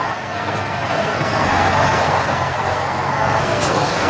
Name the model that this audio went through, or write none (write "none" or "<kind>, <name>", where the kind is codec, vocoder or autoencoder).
codec, SNAC